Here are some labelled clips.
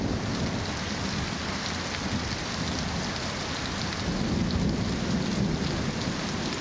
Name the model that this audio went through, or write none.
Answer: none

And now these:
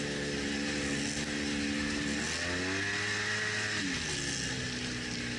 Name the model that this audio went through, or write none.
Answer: none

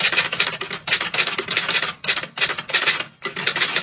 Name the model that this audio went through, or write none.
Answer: none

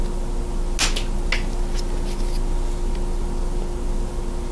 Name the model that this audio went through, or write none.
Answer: none